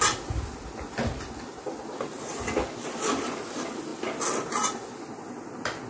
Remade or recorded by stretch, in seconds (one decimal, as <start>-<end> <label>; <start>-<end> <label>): 0.0-5.9 recorded